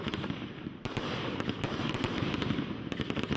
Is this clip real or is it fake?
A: fake